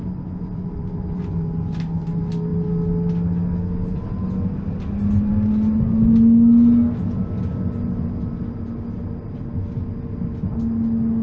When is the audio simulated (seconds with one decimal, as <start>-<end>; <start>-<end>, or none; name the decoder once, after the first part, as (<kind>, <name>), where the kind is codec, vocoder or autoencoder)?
none

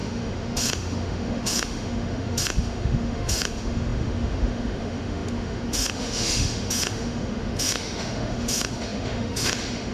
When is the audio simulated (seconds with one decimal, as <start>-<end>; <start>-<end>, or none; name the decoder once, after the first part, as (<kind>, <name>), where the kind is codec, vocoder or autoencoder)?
0.0-9.9 (autoencoder, DAC-VAE)